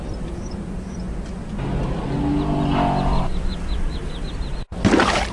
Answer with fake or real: real